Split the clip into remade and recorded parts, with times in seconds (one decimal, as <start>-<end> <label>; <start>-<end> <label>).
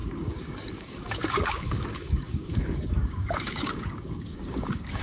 0.0-5.0 remade